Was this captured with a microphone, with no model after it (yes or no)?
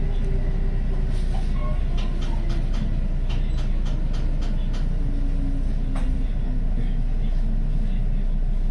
yes